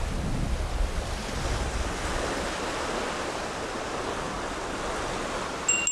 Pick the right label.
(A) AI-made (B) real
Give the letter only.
B